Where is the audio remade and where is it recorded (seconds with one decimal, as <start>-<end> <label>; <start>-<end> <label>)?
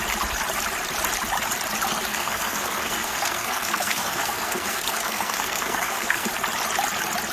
0.0-2.1 recorded; 2.1-6.3 remade; 6.3-7.3 recorded